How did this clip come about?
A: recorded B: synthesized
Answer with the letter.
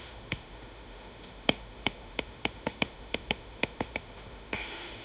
B